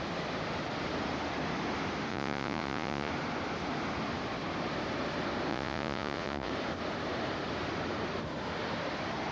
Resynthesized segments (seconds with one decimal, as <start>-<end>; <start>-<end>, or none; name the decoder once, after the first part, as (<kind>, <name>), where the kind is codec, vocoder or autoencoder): 2.1-3.1 (vocoder, Vocos); 5.5-6.5

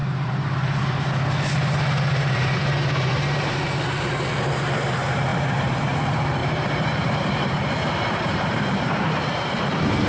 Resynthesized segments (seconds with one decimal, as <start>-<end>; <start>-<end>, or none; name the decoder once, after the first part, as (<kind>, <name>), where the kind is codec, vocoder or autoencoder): 0.0-1.1 (vocoder, BigVGAN v2); 2.1-3.5; 5.3-6.0; 6.4-9.6

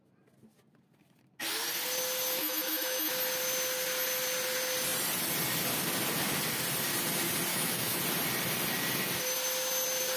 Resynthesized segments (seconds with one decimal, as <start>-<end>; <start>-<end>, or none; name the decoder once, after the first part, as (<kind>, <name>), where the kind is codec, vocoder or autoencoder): 2.4-3.1 (autoencoder, DAC-VAE); 7.5-8.0

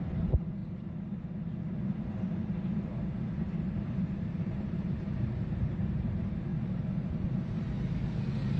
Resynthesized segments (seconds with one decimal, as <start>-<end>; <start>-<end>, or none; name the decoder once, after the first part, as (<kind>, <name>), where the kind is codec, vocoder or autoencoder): 0.0-0.6 (vocoder, BigVGAN v2); 3.2-6.5

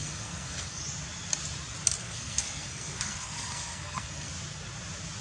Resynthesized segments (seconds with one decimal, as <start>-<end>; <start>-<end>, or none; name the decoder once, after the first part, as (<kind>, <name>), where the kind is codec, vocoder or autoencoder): 0.0-0.8 (codec, SNAC); 2.0-4.3

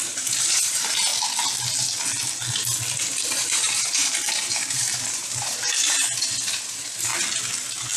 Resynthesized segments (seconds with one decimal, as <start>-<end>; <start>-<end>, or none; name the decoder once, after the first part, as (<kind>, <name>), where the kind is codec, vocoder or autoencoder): 0.0-1.1 (vocoder, BigVGAN v2); 3.0-7.1